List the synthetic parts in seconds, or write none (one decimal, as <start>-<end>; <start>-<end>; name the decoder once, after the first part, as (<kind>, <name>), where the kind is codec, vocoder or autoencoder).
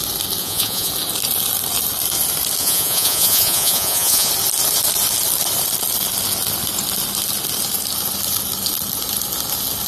0.4-0.9 (vocoder, Vocos); 2.6-4.3